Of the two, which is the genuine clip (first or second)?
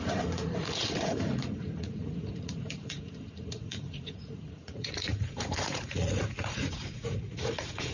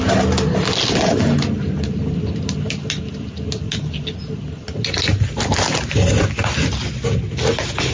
second